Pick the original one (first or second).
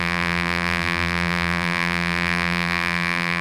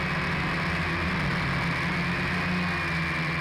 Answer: second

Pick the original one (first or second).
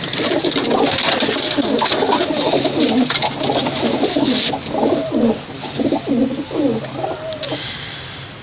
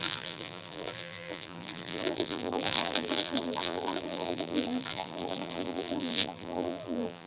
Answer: first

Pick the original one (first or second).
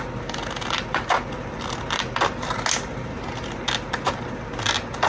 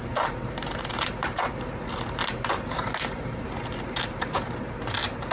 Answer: first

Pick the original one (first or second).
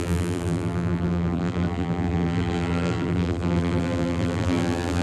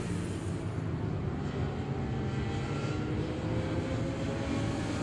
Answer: second